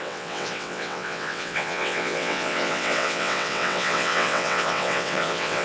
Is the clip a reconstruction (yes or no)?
yes